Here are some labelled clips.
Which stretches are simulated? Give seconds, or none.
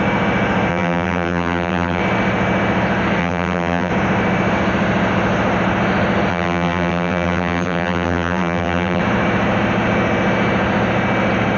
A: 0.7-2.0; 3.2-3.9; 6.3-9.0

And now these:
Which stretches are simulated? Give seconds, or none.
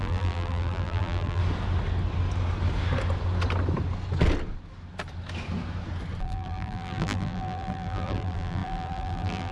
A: 0.0-1.4; 6.2-9.5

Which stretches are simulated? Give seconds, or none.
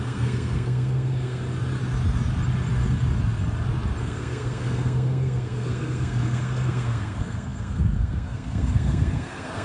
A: 0.0-1.4; 4.0-9.6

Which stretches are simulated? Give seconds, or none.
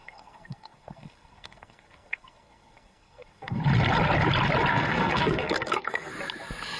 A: 0.0-3.6; 4.7-6.1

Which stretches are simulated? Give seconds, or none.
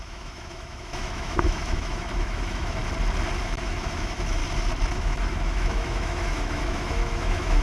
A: 0.0-2.8; 3.4-4.4; 4.9-7.6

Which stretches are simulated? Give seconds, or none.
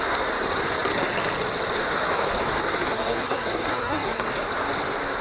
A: 2.9-4.3